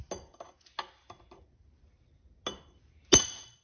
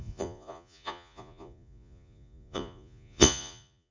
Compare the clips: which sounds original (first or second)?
first